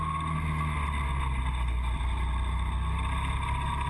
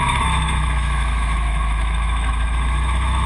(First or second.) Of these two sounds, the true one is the first